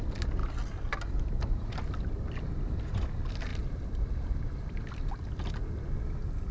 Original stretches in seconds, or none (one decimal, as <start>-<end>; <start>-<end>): 0.0-6.5